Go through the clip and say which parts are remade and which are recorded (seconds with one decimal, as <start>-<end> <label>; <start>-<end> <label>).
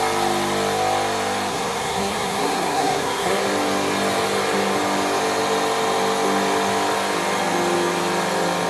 0.0-1.5 recorded; 1.5-3.4 remade; 3.4-8.7 recorded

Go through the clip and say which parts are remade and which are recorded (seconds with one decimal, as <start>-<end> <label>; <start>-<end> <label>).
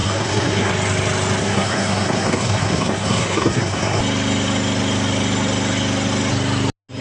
0.0-0.7 remade; 0.7-1.4 recorded; 1.4-4.0 remade; 4.0-7.0 recorded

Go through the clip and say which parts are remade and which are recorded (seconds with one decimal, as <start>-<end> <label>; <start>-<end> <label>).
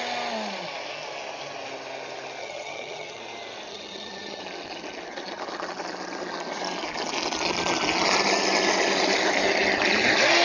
0.0-2.4 recorded; 2.4-3.2 remade; 3.2-3.7 recorded; 3.7-4.4 remade; 4.4-10.4 recorded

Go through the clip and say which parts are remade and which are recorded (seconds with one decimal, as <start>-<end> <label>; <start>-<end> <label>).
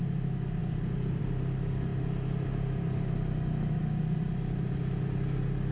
0.0-5.7 recorded